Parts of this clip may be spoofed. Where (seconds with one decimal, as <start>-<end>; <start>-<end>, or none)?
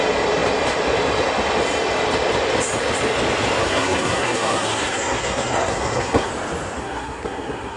3.6-6.3; 6.8-7.8